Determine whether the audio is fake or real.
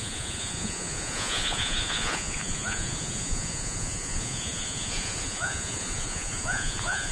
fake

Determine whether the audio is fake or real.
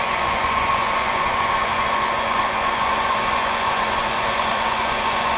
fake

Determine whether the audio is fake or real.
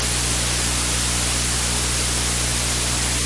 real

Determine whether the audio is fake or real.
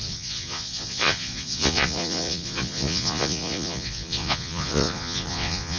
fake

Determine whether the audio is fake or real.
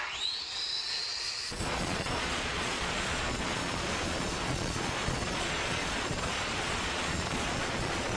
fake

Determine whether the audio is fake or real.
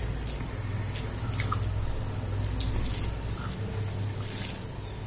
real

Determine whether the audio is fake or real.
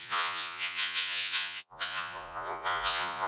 fake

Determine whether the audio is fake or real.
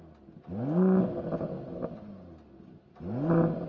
real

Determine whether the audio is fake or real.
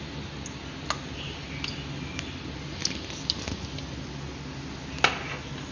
real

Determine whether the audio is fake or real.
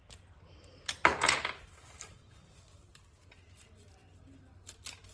real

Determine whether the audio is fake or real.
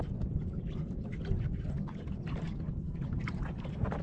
real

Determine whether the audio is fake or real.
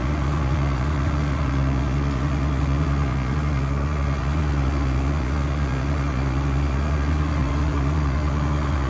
fake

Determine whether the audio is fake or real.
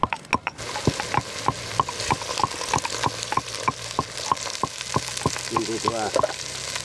real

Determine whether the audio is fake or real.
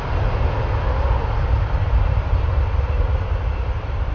real